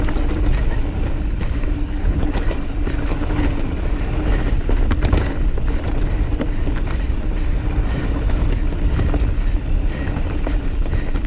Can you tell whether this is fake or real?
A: real